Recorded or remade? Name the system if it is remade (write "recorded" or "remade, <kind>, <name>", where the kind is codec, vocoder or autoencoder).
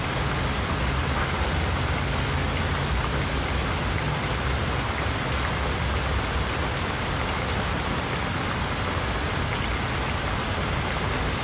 recorded